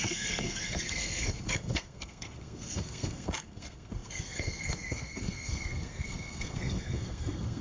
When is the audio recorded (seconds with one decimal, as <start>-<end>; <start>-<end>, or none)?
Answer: none